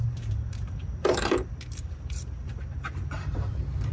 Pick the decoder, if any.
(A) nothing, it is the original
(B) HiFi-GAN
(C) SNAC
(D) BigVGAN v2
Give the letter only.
D